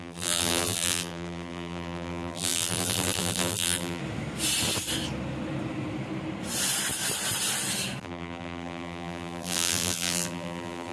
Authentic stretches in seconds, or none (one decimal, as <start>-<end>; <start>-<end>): 4.0-8.0